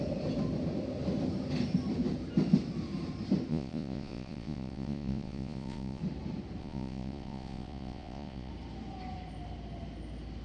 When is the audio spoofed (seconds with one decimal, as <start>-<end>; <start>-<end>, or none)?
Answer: 3.5-6.0; 6.6-8.5

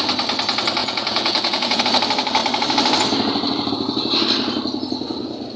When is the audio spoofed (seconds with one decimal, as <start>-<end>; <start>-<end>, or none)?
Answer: 0.8-1.8

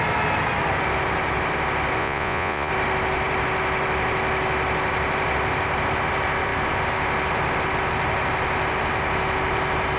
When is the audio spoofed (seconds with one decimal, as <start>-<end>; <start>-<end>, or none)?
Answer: 2.0-2.7

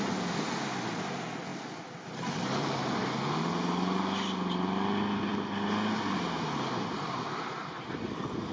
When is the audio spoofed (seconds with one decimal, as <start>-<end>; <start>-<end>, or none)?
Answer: none

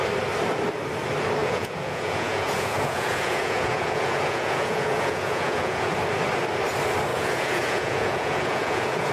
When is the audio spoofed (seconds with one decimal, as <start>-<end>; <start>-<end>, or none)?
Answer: 1.4-5.9; 7.1-9.1